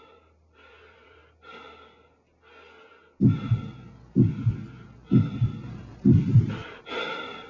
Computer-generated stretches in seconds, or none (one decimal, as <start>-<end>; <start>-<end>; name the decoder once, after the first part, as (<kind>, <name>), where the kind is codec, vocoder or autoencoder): 0.0-1.2 (vocoder, BigVGAN v2); 5.7-7.5